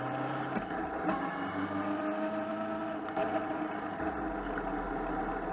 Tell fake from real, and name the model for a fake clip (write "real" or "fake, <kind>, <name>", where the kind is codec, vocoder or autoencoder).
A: real